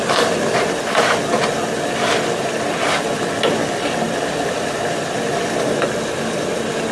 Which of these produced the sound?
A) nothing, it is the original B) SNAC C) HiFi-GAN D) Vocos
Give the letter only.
A